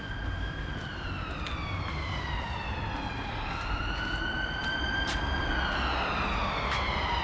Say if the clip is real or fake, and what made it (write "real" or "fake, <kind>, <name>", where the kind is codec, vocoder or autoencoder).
real